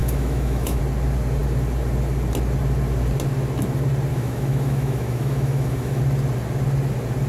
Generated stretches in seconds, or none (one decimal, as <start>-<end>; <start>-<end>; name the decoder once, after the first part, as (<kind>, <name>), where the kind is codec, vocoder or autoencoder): 0.0-0.8 (autoencoder, DAC-VAE); 4.1-6.0